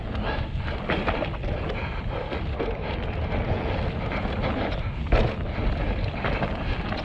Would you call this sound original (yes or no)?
yes